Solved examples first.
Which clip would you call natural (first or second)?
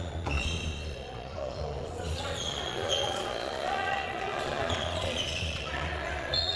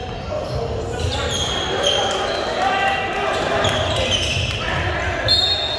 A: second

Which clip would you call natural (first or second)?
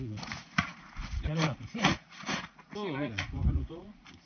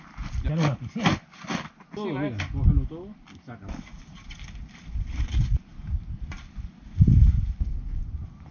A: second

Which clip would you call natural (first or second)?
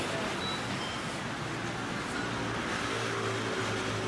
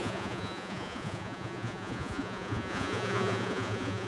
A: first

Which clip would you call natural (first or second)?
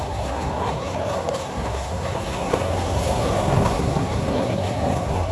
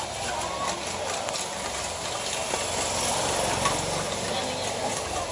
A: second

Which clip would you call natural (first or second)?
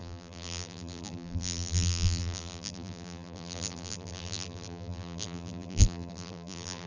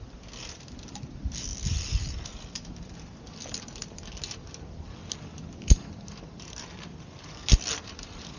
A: second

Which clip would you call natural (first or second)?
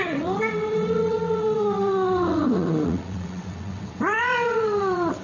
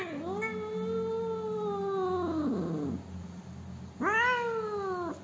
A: second